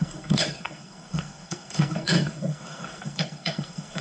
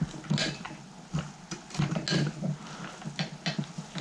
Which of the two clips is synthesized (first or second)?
first